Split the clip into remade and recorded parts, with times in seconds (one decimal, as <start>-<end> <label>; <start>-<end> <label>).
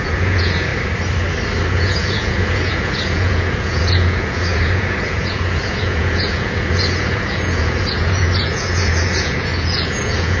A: 0.0-0.7 remade; 0.7-1.7 recorded; 1.7-10.4 remade